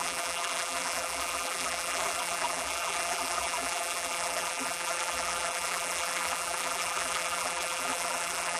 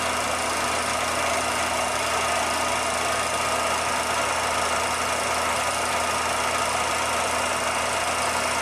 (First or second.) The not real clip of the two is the first